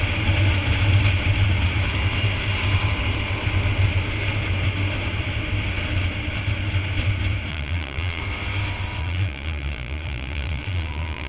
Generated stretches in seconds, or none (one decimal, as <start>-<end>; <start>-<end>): 7.5-8.2; 9.0-11.3